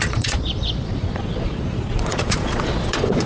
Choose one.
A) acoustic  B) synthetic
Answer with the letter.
B